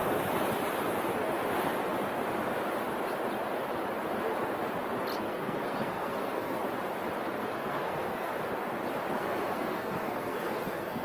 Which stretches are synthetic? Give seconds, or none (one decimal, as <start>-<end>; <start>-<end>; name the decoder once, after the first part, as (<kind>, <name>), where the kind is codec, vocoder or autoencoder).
5.2-6.6 (codec, SNAC); 7.4-8.3; 9.1-11.0